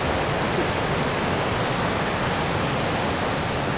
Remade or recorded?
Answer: recorded